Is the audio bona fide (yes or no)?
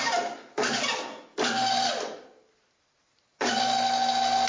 yes